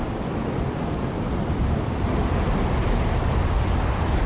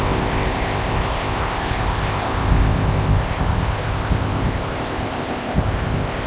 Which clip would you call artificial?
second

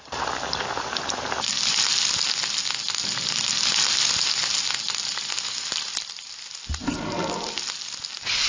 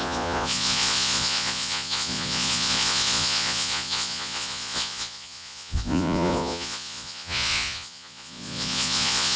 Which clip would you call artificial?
second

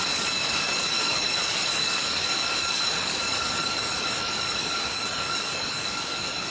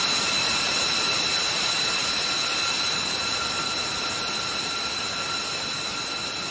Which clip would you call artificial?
first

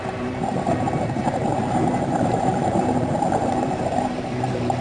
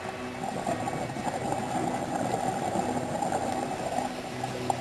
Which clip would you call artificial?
first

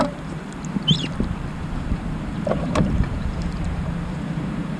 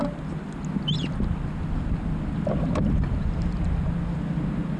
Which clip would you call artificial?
first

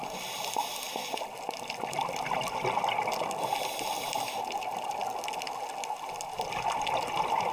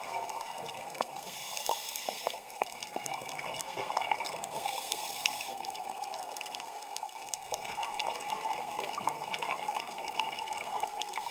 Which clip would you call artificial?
second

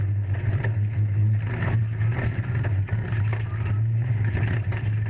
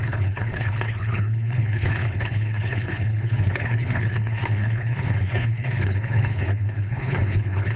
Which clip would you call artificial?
second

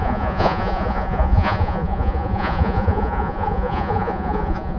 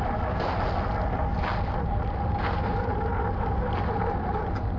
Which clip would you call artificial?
first